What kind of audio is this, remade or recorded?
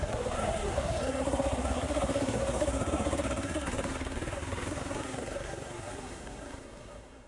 remade